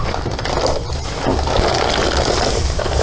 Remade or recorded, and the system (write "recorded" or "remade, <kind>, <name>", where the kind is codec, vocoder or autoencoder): recorded